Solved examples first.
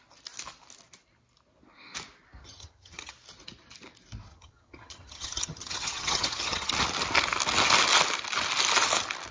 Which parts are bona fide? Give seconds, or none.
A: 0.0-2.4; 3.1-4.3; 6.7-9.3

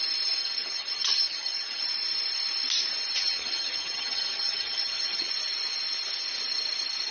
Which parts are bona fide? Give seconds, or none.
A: 0.0-0.4; 1.8-3.2; 5.3-7.1

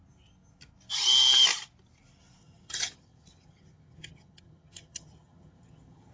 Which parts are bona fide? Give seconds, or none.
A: 0.0-2.4

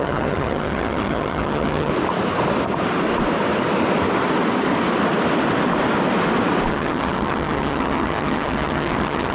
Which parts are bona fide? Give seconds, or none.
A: 1.9-6.7

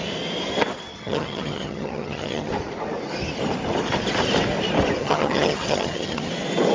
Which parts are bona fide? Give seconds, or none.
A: 0.0-0.9; 2.5-5.0; 6.3-6.7